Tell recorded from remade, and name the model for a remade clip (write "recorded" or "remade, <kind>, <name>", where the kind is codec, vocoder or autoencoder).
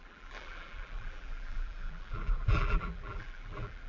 remade, vocoder, BigVGAN v2